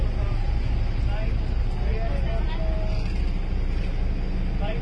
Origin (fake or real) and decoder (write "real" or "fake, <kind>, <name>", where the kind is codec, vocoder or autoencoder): real